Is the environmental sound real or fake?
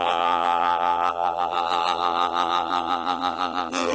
fake